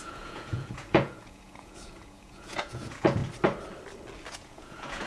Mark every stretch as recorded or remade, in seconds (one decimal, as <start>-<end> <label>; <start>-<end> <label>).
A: 0.0-3.2 remade; 3.2-4.3 recorded; 4.3-5.1 remade